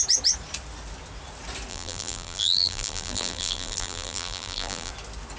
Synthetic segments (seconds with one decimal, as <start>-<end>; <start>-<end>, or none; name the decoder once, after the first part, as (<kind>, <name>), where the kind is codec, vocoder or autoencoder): 1.7-4.9 (vocoder, BigVGAN v2)